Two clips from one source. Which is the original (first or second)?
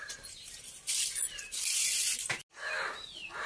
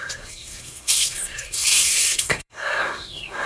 first